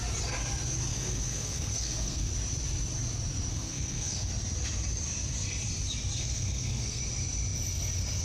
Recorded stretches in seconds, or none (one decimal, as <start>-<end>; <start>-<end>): 0.0-0.9; 2.3-3.5; 4.3-6.2; 7.0-8.2